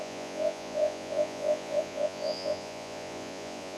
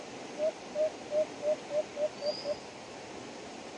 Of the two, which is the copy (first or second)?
first